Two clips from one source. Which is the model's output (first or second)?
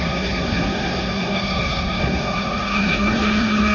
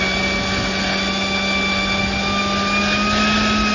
first